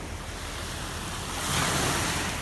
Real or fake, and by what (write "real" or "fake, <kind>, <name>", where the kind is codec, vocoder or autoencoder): real